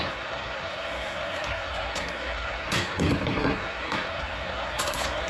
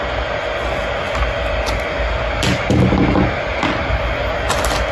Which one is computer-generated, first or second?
first